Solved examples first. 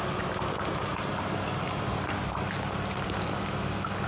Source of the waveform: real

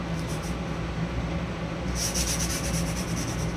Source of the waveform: real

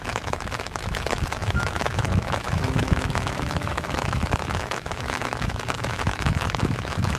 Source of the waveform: fake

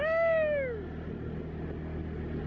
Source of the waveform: real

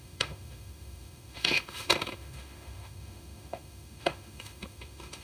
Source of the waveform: fake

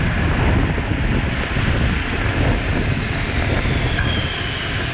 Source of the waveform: real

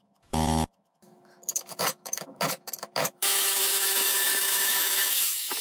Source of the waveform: fake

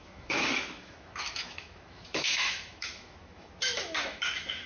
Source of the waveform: fake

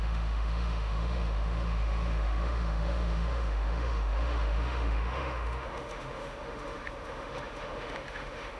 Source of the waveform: fake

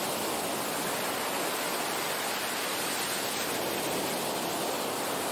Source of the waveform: real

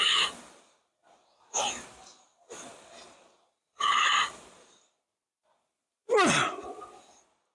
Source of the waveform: real